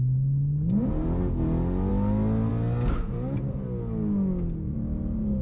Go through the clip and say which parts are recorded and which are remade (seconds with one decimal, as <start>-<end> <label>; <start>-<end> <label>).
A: 0.0-5.4 recorded